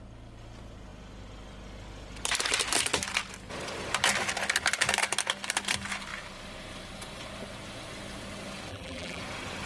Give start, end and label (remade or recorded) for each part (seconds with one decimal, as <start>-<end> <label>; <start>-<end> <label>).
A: 0.0-8.7 recorded; 8.7-9.2 remade; 9.2-9.7 recorded